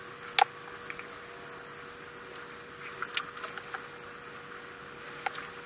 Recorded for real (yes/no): yes